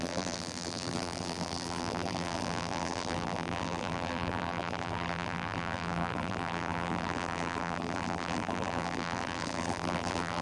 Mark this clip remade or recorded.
remade